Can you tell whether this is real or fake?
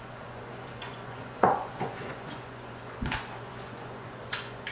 fake